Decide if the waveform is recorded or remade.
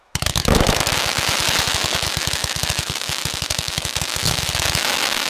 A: remade